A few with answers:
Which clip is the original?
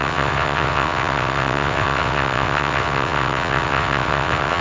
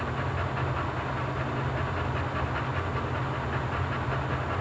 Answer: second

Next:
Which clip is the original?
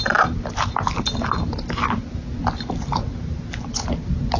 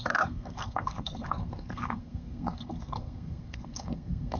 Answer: first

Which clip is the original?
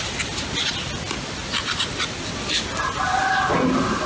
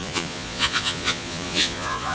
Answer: first